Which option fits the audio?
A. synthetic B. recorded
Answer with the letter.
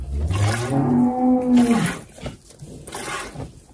B